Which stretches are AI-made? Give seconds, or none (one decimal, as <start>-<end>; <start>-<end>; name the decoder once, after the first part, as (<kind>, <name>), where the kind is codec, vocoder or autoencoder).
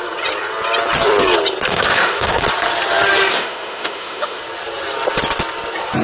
1.7-2.4 (autoencoder, DAC-VAE); 3.3-4.4